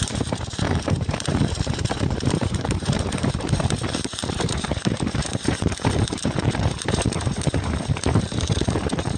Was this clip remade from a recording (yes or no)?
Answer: yes